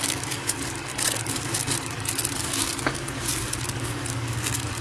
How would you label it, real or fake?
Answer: fake